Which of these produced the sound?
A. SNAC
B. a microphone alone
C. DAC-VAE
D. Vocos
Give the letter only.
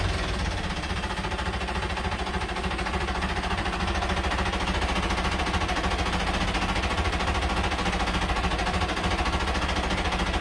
B